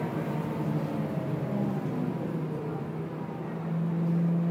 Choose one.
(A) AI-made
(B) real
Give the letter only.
B